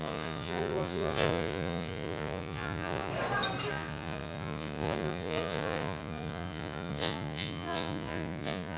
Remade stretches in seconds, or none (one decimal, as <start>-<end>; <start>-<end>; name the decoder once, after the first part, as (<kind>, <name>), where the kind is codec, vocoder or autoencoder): 0.0-3.1 (vocoder, Vocos); 3.7-8.8